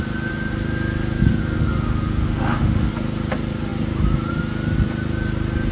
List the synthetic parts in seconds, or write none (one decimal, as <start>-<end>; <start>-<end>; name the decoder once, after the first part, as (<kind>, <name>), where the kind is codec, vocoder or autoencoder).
1.4-2.9 (autoencoder, DAC-VAE)